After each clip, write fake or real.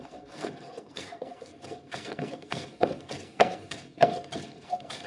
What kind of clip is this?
fake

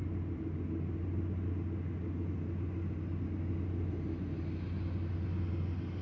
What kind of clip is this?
real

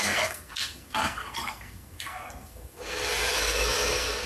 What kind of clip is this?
fake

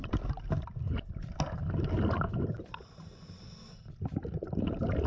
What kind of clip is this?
real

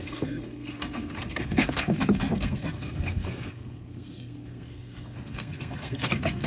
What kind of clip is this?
fake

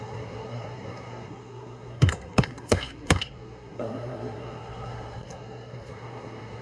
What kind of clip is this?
fake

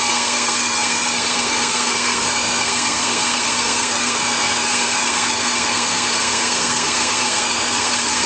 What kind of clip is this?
fake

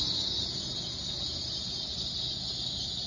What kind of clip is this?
real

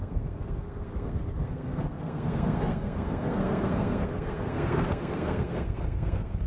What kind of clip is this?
fake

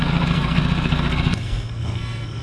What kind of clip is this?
fake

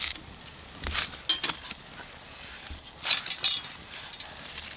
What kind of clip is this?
real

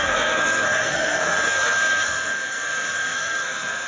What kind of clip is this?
fake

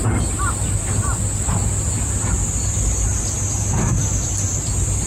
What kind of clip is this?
real